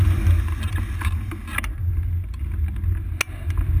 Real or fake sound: real